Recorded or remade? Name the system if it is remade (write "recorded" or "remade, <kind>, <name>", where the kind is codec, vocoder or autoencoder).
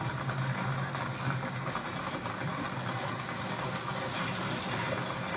recorded